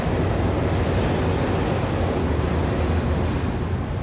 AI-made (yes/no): no